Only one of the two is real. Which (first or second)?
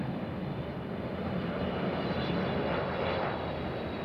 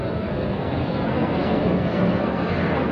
first